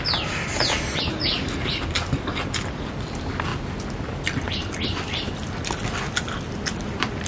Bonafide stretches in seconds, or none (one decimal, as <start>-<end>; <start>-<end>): 0.0-7.3